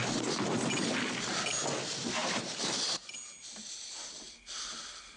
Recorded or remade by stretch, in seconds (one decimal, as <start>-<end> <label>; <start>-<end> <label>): 0.0-2.2 recorded; 2.2-3.1 remade; 3.1-5.2 recorded